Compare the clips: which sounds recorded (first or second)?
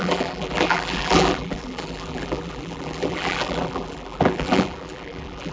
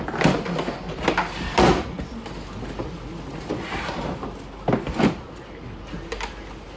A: second